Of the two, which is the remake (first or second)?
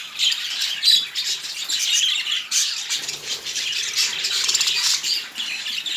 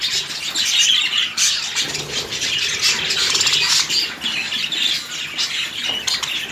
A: first